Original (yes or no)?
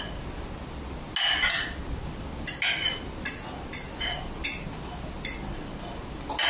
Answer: yes